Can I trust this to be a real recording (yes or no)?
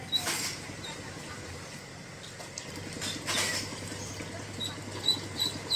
yes